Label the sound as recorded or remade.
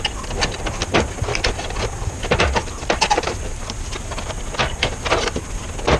recorded